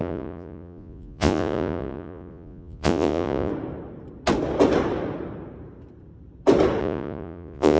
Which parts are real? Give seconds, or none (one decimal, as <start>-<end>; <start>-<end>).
3.5-6.8